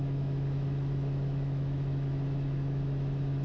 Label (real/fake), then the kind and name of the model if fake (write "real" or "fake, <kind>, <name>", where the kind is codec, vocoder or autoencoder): fake, autoencoder, DAC-VAE